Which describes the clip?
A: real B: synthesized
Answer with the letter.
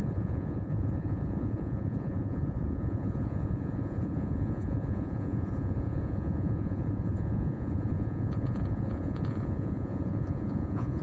B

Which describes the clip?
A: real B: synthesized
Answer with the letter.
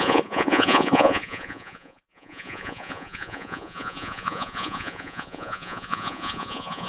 B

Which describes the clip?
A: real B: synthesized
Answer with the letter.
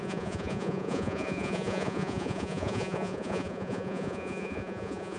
B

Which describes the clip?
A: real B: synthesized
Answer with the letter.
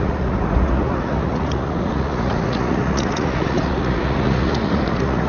B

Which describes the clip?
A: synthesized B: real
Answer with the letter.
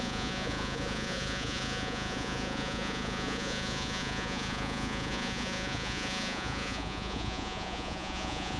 A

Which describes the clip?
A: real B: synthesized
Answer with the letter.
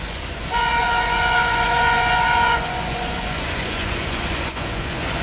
B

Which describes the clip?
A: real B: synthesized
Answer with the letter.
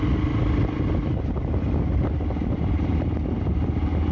A